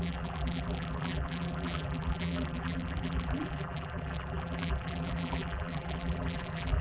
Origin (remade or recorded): remade